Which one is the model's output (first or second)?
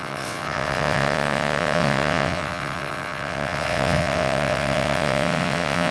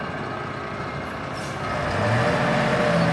first